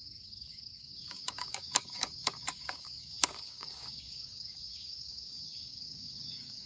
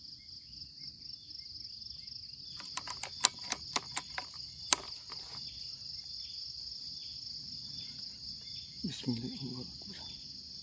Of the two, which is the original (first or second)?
second